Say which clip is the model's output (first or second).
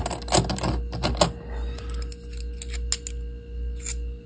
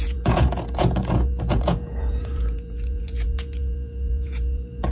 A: second